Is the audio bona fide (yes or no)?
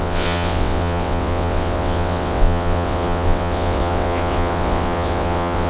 no